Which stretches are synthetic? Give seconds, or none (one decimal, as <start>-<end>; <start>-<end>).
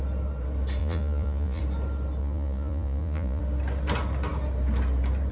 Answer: 0.8-1.6; 2.2-3.4